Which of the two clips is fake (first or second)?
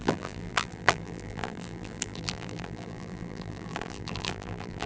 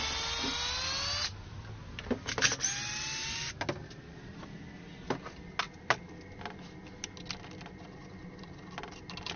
first